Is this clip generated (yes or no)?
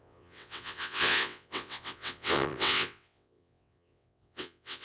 yes